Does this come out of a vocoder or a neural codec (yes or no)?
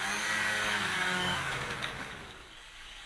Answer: yes